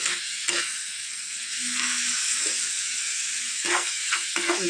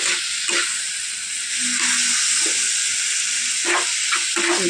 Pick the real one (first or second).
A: second